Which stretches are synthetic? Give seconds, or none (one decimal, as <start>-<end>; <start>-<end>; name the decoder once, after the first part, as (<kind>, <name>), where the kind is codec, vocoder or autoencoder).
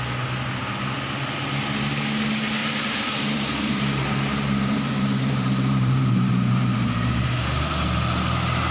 2.6-7.4 (vocoder, BigVGAN v2)